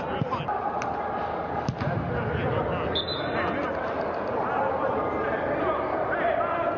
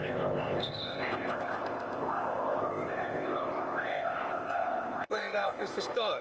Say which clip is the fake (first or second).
second